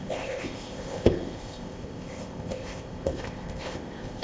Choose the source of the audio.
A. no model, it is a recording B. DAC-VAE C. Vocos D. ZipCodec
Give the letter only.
D